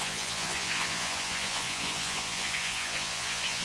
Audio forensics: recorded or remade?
remade